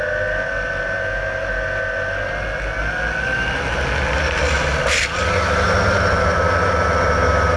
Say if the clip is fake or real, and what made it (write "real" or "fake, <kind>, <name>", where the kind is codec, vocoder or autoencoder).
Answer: real